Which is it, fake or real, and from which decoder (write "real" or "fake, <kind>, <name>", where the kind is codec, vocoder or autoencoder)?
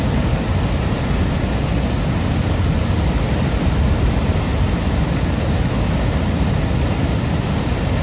real